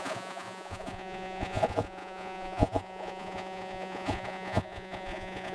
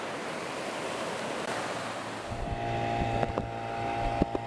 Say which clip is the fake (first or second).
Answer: first